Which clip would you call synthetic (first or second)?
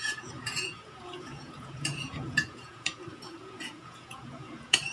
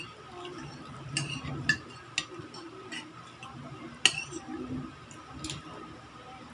first